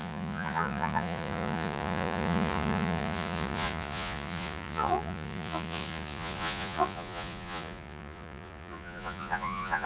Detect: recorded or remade remade